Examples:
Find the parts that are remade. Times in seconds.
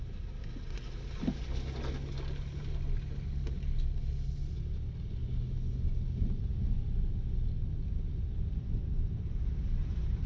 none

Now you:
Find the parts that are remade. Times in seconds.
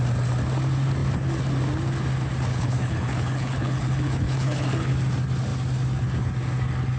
2.5-4.9 (codec, HILCodec)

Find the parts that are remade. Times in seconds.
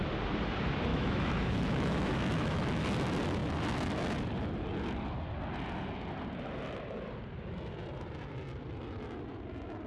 0.9-2.8 (autoencoder, DAC-VAE)